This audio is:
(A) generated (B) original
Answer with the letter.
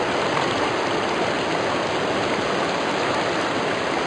B